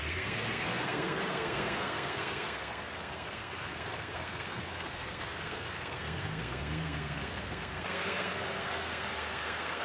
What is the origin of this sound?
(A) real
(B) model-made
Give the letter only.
B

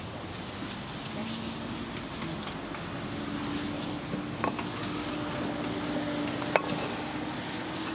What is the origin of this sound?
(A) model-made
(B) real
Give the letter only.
B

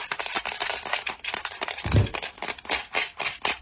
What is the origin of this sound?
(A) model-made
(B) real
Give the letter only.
B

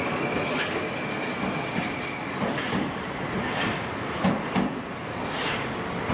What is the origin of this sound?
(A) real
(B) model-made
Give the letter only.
A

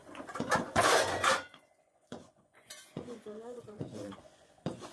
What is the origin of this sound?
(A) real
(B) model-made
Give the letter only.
B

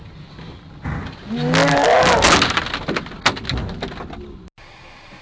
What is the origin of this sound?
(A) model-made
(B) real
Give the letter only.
B